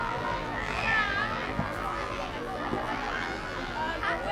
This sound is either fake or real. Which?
fake